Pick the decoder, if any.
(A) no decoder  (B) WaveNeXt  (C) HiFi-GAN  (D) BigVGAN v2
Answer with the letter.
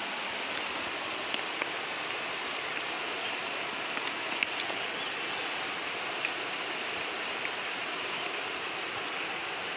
A